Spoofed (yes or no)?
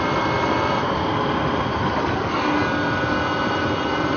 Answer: no